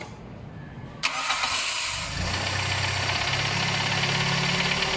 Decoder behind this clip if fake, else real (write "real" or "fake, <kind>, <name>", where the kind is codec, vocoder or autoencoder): real